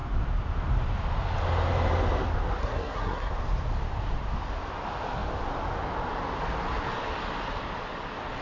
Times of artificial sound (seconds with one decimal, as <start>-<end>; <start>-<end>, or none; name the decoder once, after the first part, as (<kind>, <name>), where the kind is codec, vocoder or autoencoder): 2.6-3.3 (codec, SNAC)

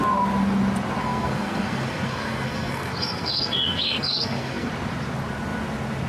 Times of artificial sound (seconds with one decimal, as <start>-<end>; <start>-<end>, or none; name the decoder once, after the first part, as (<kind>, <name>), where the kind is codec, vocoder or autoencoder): 1.0-4.7 (codec, SNAC)